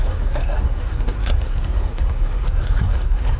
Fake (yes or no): yes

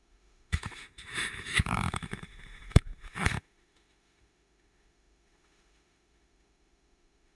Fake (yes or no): yes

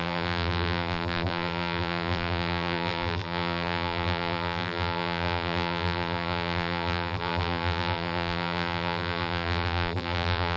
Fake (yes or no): yes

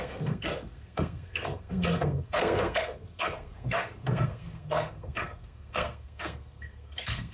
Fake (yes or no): yes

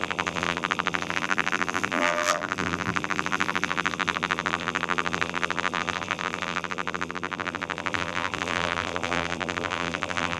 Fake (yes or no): yes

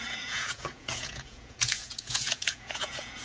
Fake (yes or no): yes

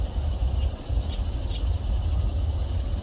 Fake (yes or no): no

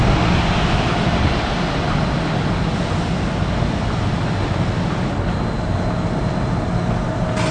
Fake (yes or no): no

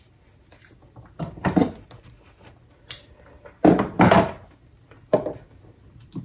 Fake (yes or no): no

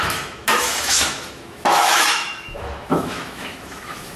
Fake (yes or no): yes